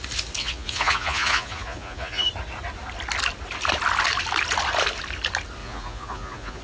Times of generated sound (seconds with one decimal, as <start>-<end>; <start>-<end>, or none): 0.4-2.3; 5.6-6.6